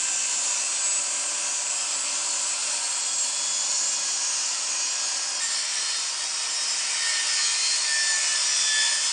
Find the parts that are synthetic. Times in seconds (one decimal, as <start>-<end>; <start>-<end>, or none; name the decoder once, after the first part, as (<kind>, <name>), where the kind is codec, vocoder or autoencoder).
none